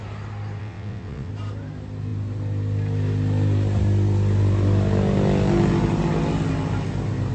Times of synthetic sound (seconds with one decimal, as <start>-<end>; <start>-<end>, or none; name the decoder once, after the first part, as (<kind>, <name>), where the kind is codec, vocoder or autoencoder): 0.6-1.3 (vocoder, WaveNeXt)